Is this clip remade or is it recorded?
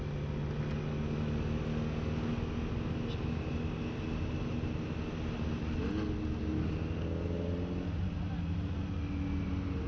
recorded